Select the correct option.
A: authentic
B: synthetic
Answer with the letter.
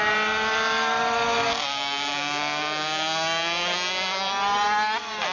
A